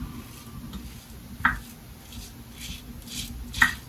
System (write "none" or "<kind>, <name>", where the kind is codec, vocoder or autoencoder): none